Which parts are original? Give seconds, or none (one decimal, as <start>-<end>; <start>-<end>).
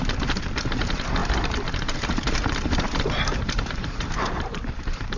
none